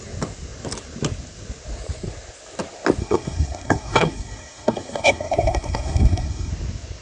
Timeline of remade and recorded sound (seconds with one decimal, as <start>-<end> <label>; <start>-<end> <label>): 0.0-3.0 recorded; 3.0-6.5 remade; 6.5-7.0 recorded